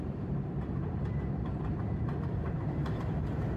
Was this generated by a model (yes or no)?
yes